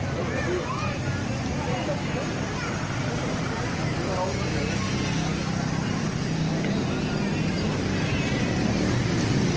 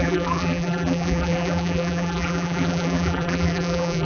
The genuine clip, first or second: first